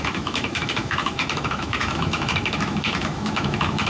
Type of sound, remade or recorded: remade